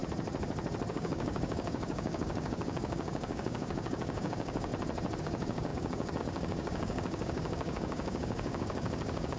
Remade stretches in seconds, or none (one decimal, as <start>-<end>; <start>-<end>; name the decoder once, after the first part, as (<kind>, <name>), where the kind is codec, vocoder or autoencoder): 0.9-4.7 (codec, DAC); 5.2-9.4